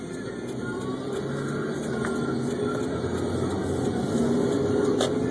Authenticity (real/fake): real